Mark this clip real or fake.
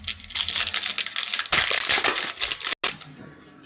real